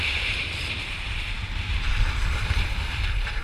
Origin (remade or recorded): remade